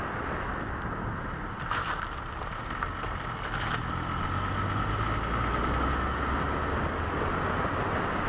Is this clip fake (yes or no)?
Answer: no